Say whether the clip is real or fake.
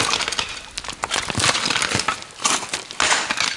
real